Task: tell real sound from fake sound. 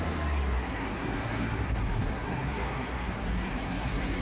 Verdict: fake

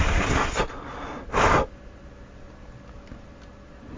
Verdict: real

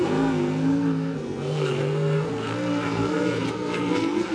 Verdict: fake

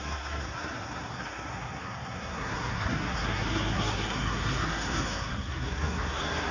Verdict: fake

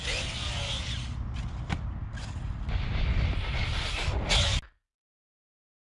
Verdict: real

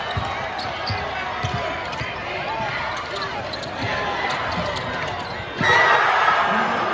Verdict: real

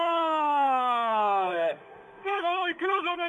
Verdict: fake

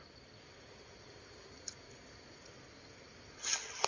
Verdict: real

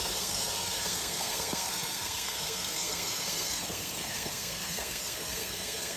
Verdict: fake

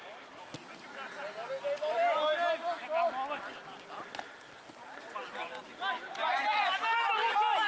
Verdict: real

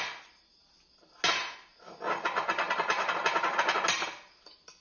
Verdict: real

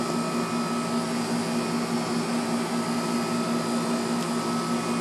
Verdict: real